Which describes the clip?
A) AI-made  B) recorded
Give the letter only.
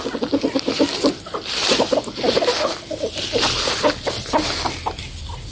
B